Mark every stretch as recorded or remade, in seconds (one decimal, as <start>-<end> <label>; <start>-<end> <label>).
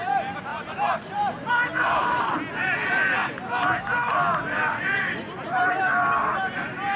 0.0-0.5 recorded; 0.5-1.5 remade; 1.5-7.0 recorded